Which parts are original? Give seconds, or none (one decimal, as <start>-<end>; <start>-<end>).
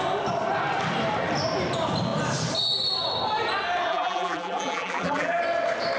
0.0-3.9; 5.4-6.0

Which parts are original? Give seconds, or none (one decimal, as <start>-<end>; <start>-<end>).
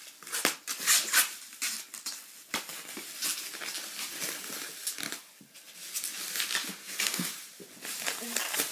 0.0-6.8; 7.3-8.7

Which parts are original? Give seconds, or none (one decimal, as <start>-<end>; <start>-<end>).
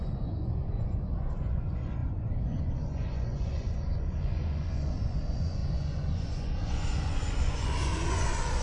none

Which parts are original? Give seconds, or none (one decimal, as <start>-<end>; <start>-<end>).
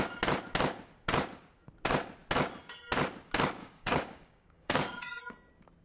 0.0-3.6; 5.2-5.8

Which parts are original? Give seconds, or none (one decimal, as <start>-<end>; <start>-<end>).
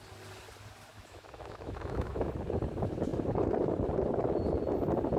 0.0-0.9; 2.3-5.2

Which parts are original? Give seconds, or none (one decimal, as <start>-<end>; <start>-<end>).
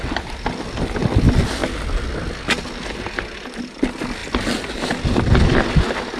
0.0-6.2